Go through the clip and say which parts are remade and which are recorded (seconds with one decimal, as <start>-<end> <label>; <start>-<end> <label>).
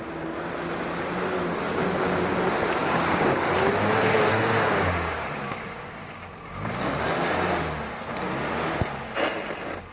0.0-2.8 recorded; 2.8-3.5 remade; 3.5-4.3 recorded; 4.3-6.7 remade; 6.7-9.9 recorded